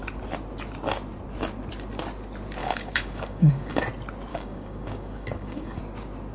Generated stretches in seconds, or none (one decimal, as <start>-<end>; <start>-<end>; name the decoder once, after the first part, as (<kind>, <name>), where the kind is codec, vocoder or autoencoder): 2.6-3.8 (codec, DAC); 4.3-5.8

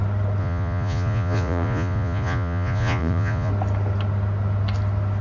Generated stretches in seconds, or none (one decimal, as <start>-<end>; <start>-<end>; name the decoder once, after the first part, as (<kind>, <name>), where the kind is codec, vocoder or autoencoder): 0.4-3.5 (vocoder, Vocos)

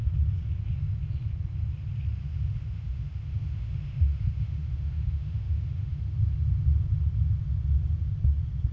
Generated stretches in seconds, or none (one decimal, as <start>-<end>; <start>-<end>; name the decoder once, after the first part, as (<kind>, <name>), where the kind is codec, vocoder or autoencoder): 2.2-6.0 (autoencoder, DAC-VAE)